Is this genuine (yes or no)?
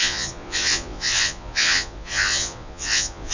no